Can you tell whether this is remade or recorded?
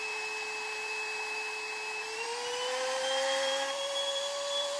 remade